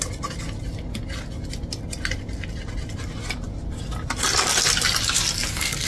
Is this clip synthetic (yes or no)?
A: no